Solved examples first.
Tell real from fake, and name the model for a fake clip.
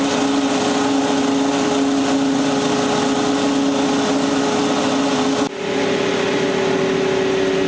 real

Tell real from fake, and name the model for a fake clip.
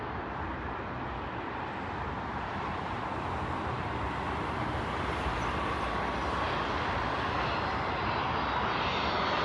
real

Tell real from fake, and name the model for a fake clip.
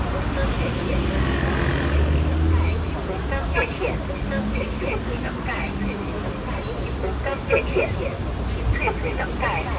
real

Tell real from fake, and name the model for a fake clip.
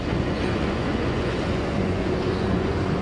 fake, vocoder, Vocos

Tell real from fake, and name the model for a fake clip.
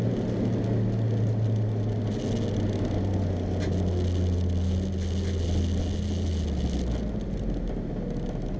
real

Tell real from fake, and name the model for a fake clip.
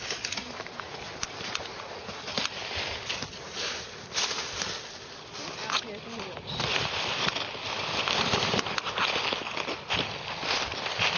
real